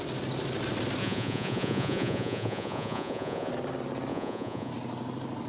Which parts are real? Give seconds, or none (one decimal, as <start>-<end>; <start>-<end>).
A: 0.0-1.0; 3.5-4.1; 4.7-5.5